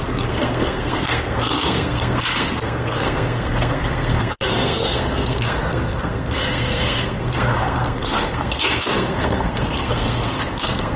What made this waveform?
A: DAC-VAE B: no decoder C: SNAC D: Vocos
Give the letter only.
C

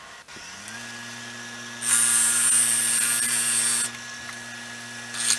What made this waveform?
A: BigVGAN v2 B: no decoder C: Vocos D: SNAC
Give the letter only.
B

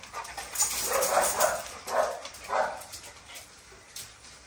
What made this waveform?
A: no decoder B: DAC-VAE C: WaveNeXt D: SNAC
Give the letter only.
A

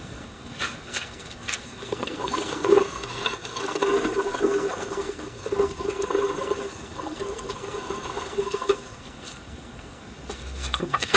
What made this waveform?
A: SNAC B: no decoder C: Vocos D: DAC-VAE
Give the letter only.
A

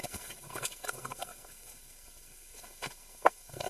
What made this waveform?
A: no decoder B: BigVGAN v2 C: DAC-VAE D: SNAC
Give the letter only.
D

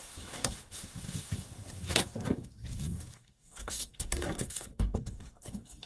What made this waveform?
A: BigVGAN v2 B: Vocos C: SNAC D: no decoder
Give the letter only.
C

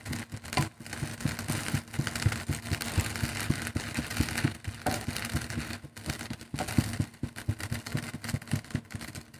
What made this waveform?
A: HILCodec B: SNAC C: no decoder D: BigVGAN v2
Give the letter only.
C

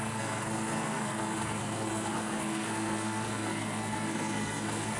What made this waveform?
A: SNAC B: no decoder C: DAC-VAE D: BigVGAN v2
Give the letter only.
A